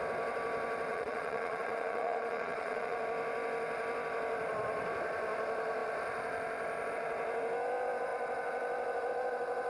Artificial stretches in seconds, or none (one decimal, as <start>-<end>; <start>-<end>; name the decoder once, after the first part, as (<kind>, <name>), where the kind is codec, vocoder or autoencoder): 0.9-3.0 (vocoder, Vocos)